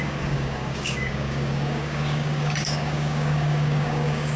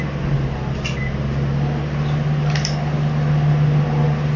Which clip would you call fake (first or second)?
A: first